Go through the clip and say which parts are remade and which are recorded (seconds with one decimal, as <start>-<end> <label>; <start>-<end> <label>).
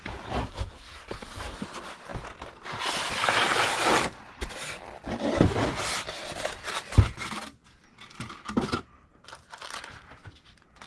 0.0-0.4 recorded; 0.4-1.6 remade; 1.6-10.9 recorded